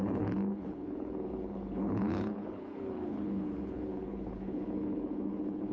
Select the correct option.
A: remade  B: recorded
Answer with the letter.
A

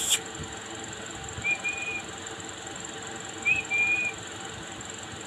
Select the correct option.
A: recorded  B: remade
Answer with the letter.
A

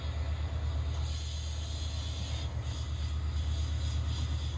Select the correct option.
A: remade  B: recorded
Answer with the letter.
B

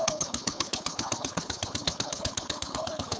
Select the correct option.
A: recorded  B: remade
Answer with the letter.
B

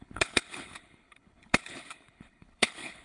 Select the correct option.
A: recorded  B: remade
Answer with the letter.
B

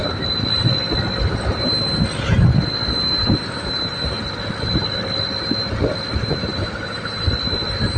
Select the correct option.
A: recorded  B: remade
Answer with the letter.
A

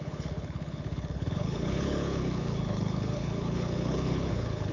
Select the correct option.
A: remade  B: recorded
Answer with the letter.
A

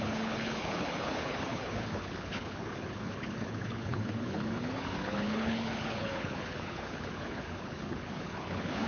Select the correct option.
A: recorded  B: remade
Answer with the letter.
B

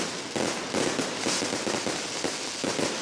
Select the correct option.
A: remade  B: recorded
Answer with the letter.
B